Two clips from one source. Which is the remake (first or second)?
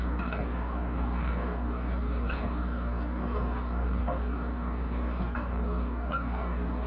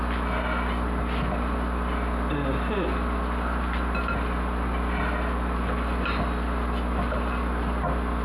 first